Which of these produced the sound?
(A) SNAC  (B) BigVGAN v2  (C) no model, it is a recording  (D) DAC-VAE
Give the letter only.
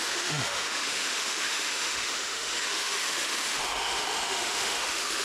D